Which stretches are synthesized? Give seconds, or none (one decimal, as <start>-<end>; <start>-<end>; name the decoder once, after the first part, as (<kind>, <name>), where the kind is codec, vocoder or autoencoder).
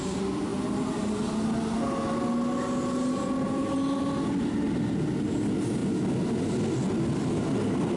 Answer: none